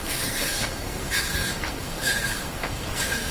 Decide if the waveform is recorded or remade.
remade